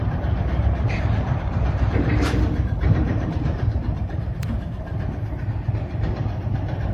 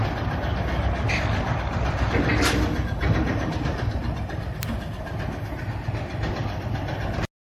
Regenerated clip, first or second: first